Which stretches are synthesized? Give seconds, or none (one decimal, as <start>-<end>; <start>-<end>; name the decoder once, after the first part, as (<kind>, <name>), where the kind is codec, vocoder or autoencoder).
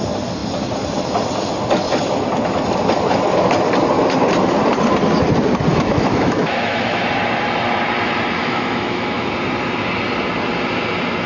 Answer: 5.7-7.0 (autoencoder, DAC-VAE); 8.4-9.3